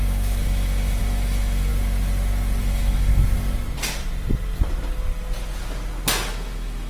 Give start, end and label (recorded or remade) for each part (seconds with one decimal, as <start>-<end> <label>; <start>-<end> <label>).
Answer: 0.0-1.7 remade; 1.7-2.6 recorded; 2.6-3.1 remade; 3.1-6.3 recorded; 6.3-6.9 remade